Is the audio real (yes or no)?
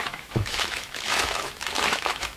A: no